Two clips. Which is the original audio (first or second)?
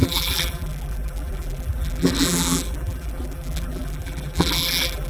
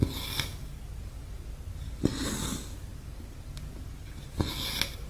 second